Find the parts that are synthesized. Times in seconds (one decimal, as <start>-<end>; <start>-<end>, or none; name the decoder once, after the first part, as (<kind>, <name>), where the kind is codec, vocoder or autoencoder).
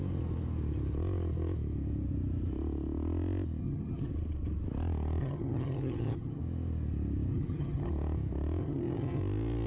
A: 3.6-4.1 (vocoder, HiFi-GAN); 5.2-6.4; 7.3-7.9; 8.6-9.2